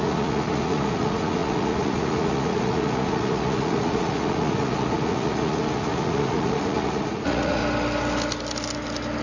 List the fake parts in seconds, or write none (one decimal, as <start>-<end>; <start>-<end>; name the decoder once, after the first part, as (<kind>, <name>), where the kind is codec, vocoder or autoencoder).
0.0-7.6 (vocoder, Vocos)